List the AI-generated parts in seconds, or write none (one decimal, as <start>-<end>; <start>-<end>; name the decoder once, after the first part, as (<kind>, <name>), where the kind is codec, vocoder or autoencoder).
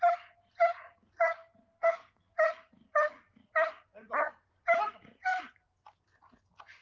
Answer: 1.7-2.3 (codec, SNAC)